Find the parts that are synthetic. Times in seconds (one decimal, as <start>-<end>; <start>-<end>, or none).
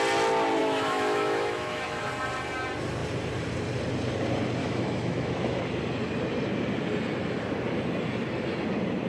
0.6-2.1; 4.6-5.6